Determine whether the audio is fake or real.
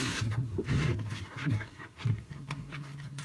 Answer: fake